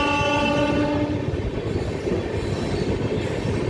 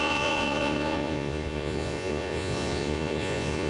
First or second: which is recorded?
first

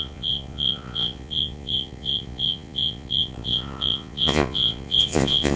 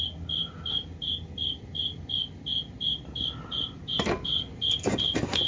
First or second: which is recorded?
second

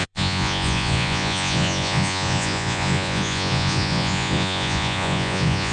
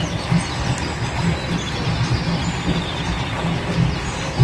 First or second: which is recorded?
second